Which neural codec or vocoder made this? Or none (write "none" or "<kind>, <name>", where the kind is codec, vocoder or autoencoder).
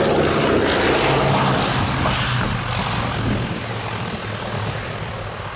none